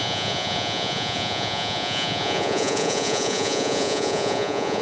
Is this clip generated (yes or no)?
yes